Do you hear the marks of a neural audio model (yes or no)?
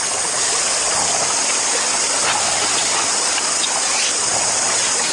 no